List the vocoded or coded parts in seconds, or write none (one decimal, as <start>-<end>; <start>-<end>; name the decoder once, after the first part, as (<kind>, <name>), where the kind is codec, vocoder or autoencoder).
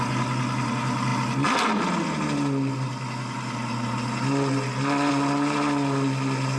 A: none